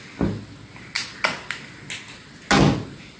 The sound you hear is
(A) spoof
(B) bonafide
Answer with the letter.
B